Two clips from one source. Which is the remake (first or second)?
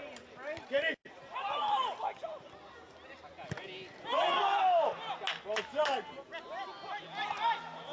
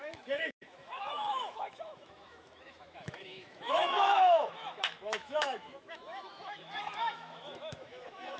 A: second